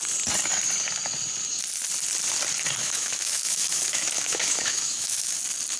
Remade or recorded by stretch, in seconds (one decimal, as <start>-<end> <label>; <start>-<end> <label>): 0.0-2.8 recorded; 2.8-5.3 remade; 5.3-5.8 recorded

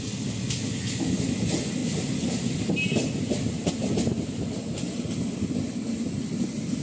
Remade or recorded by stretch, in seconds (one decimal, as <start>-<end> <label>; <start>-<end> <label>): 0.0-1.8 recorded; 1.8-3.7 remade; 3.7-6.8 recorded

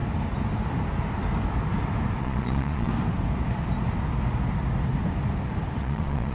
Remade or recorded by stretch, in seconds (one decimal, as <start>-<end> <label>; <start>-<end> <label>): 0.0-2.2 recorded; 2.2-2.9 remade; 2.9-5.8 recorded; 5.8-6.3 remade